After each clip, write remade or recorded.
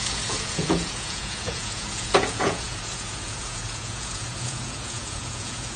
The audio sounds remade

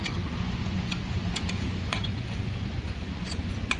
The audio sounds remade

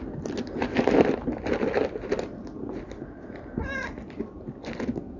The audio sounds recorded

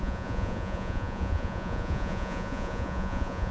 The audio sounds remade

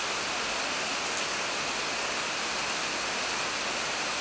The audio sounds recorded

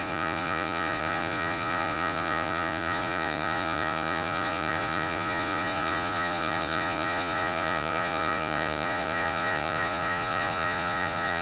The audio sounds remade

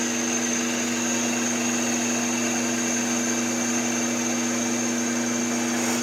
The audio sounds recorded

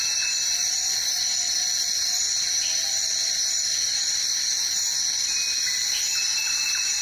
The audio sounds recorded